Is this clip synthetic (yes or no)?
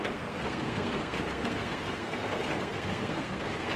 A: yes